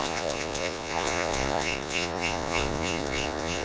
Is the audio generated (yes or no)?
yes